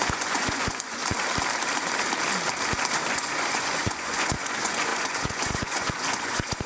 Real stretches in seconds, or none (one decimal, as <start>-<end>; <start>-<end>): 1.0-3.1